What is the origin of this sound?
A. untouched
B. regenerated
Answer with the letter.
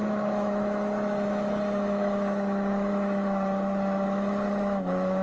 B